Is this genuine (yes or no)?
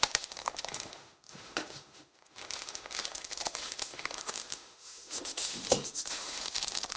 no